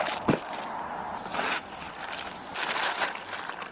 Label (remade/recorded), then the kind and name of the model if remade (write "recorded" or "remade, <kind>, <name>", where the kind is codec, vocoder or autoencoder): remade, vocoder, BigVGAN v2